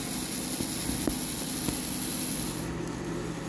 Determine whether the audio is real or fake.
real